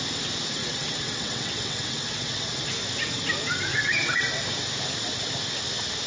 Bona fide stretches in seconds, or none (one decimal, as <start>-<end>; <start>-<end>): 0.0-0.6; 2.7-3.7; 4.3-6.1

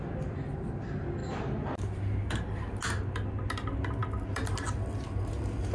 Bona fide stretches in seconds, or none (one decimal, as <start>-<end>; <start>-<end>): 0.0-5.7

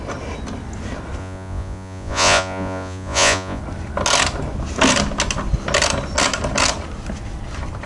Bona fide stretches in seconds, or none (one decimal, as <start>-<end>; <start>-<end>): 0.0-1.2; 3.6-7.9

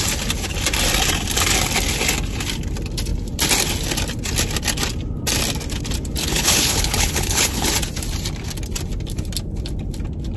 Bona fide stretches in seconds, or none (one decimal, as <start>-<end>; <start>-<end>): 0.0-6.2; 7.7-10.4

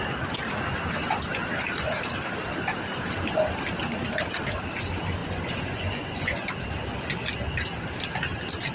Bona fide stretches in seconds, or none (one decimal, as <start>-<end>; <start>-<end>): 0.0-5.2; 6.5-8.7

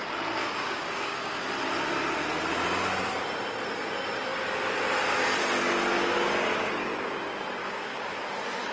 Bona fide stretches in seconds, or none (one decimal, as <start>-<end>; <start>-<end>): 0.0-0.4; 1.4-7.6; 8.2-8.7

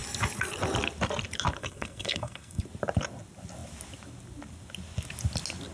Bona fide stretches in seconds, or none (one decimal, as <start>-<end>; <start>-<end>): 0.0-1.6; 2.6-5.7

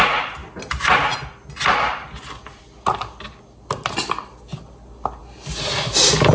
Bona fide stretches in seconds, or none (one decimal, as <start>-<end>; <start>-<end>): 0.0-6.3